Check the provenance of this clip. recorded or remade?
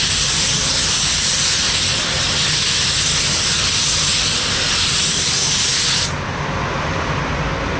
recorded